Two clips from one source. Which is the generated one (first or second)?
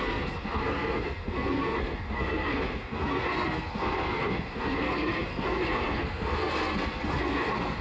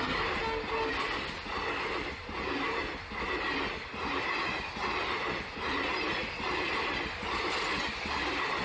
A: first